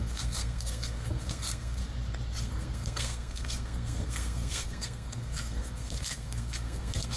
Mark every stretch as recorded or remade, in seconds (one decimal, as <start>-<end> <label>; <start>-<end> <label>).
0.0-1.8 remade; 1.8-2.4 recorded; 2.4-7.2 remade